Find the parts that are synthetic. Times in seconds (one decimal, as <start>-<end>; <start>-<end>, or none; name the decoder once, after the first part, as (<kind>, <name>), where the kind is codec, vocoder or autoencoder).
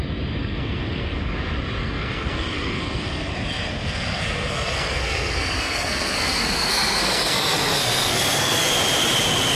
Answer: 0.4-1.2 (codec, SNAC); 1.8-3.3; 3.7-8.7